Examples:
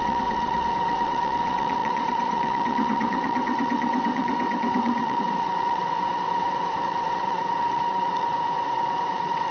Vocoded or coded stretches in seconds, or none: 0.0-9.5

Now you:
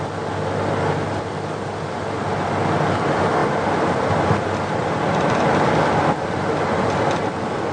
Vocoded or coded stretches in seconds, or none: none

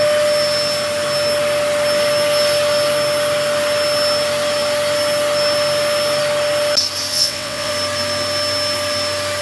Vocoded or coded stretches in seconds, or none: 7.1-7.7

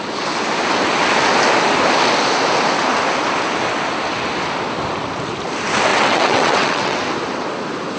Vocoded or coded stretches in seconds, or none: 5.9-7.0